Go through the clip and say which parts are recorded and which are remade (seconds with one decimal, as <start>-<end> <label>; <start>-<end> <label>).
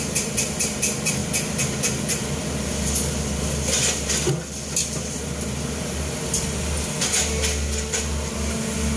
0.0-9.0 recorded